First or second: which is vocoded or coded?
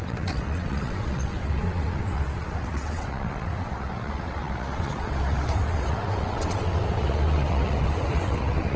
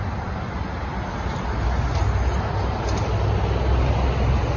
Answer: first